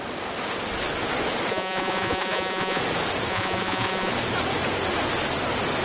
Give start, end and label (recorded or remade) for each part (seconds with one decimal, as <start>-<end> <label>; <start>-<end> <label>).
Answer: 0.0-1.5 recorded; 1.5-2.8 remade; 2.8-3.3 recorded; 3.3-4.1 remade; 4.1-5.8 recorded